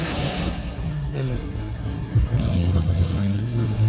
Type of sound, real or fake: fake